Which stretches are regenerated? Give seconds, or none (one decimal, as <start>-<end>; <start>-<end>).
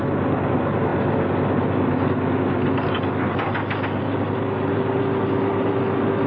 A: none